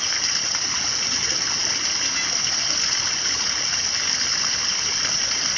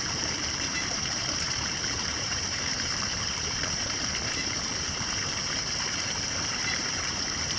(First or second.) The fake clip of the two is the second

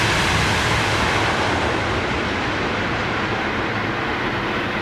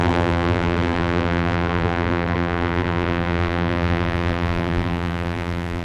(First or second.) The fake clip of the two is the second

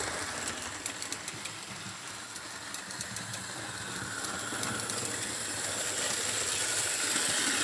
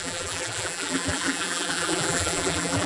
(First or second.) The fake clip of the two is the second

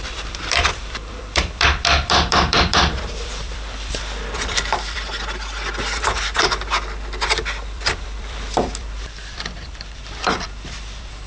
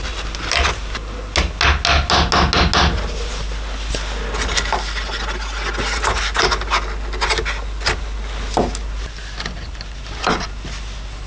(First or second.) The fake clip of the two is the first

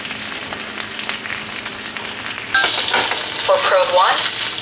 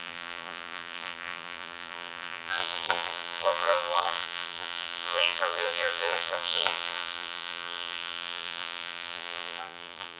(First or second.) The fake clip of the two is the second